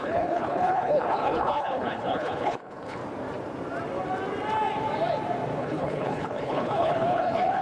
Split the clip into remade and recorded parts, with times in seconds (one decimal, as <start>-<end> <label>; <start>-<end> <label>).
0.0-3.0 remade; 3.0-5.6 recorded; 5.6-7.6 remade